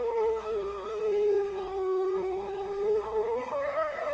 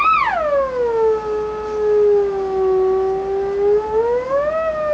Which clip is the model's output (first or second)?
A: first